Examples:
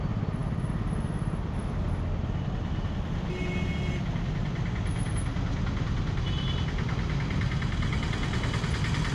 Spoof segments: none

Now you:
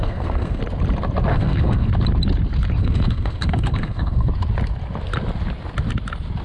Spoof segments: 0.0-0.6 (codec, SNAC); 1.3-1.9; 2.8-4.3

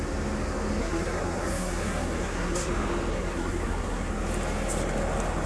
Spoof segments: 0.8-2.7 (codec, SNAC); 3.1-4.1

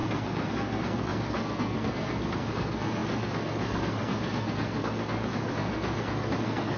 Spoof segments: 0.0-6.8 (codec, SNAC)